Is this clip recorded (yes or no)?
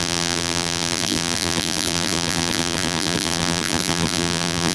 no